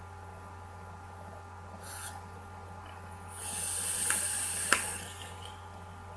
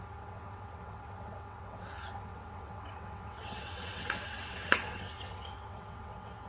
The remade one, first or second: second